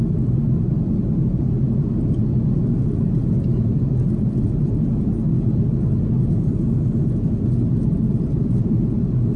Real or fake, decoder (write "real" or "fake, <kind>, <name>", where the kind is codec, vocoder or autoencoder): real